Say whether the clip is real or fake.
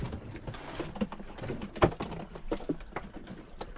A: real